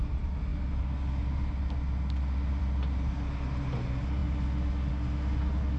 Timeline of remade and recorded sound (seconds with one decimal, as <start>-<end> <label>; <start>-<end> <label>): 0.0-5.8 recorded

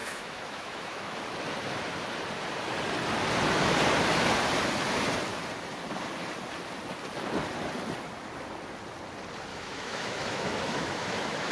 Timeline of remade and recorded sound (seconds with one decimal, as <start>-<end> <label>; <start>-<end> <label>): 0.0-1.2 remade; 1.2-9.5 recorded; 9.5-11.5 remade

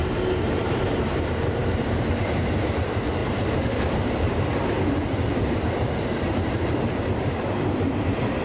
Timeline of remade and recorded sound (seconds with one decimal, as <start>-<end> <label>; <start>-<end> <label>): 0.0-4.5 remade; 4.5-5.8 recorded; 5.8-8.4 remade

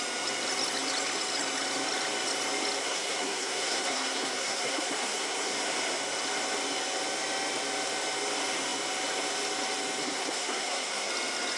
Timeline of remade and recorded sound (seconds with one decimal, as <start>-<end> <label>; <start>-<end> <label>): 0.0-2.8 recorded; 2.8-5.5 remade; 5.5-10.0 recorded; 10.0-11.1 remade; 11.1-11.6 recorded

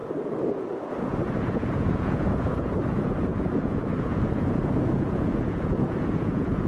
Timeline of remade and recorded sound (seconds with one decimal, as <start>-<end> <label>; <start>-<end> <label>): 0.0-1.0 recorded; 1.0-6.7 remade